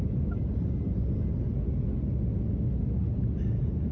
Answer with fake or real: real